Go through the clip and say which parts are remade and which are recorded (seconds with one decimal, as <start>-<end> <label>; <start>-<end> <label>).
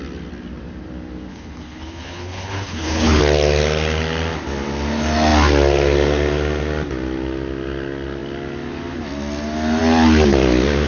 0.0-1.3 recorded; 1.3-3.2 remade; 3.2-10.9 recorded